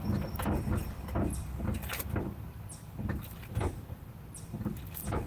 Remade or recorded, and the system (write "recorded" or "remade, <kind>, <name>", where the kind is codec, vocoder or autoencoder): remade, vocoder, BigVGAN v2